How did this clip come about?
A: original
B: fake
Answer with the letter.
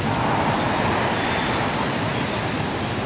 A